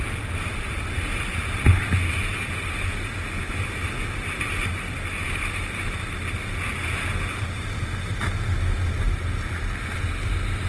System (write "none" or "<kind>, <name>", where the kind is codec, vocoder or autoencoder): none